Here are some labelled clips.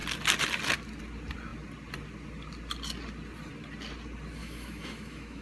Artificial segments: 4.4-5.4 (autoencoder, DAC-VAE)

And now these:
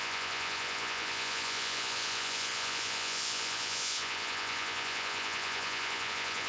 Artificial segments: 0.0-6.5 (vocoder, Vocos)

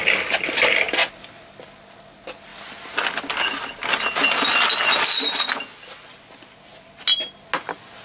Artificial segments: none

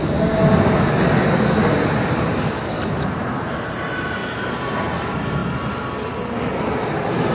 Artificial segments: 0.0-0.4 (vocoder, BigVGAN v2); 2.7-4.2; 4.9-5.4; 6.3-7.3

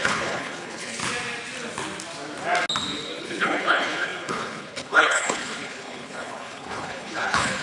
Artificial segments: 0.0-1.0 (codec, HILCodec); 3.2-7.6

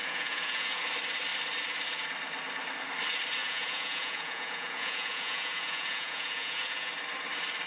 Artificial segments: 0.0-0.8 (vocoder, Vocos); 3.4-6.9

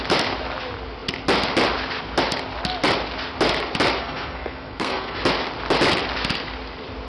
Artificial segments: 4.0-5.2 (codec, SNAC)